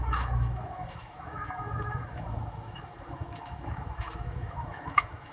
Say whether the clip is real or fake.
fake